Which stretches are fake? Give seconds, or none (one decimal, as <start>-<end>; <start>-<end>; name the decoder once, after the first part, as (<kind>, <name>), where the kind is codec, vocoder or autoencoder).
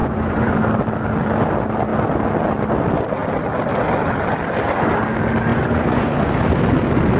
0.0-0.5 (vocoder, Vocos); 5.5-6.3